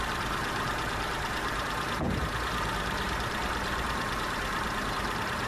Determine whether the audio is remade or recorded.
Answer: remade